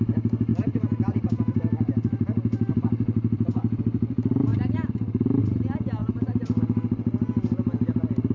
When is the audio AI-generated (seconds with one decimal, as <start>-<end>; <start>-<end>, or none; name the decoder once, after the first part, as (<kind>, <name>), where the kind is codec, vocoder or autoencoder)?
0.5-3.8 (vocoder, BigVGAN v2)